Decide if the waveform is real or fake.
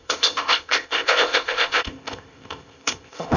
fake